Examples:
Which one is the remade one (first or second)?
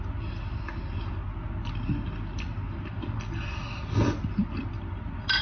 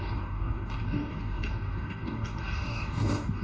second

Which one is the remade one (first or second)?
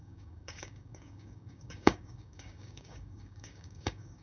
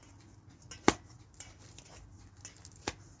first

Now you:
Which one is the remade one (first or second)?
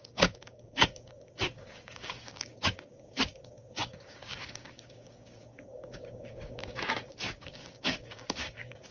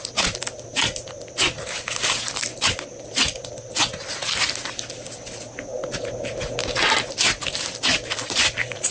first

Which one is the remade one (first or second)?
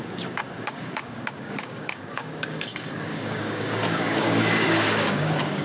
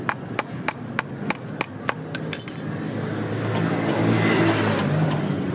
first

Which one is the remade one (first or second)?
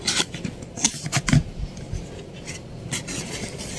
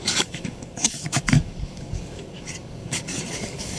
second